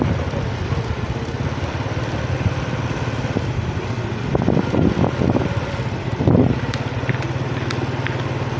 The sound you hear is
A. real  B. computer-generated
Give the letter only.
A